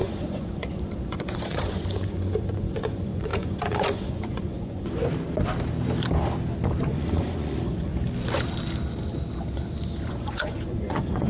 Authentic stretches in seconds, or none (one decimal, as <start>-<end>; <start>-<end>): 5.0-6.9; 7.9-10.1